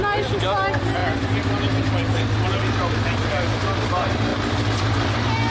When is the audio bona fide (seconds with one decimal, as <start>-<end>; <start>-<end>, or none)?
0.0-5.5